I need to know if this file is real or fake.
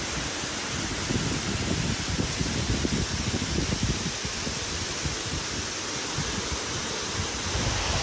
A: real